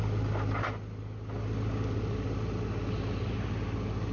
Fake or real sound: real